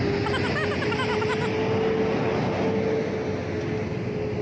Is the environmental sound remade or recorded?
recorded